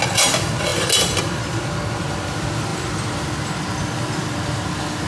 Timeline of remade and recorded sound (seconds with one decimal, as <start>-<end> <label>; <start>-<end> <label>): 0.0-5.1 recorded